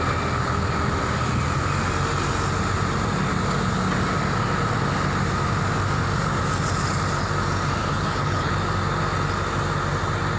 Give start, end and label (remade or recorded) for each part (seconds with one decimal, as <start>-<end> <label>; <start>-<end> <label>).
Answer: 0.0-7.8 recorded; 7.8-8.5 remade; 8.5-10.4 recorded